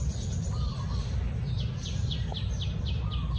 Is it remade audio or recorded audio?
recorded